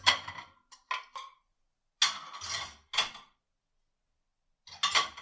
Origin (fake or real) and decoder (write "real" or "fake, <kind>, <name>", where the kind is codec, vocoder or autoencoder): real